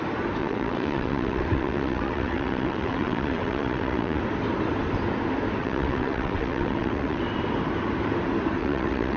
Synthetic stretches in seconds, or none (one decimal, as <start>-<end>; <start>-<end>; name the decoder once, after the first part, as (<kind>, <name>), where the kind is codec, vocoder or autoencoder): 0.4-4.2 (vocoder, WaveNeXt); 5.6-7.2; 8.6-9.2